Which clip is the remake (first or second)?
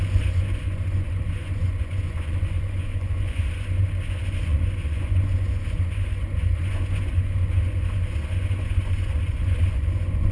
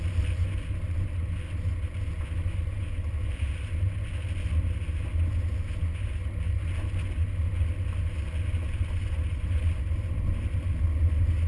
first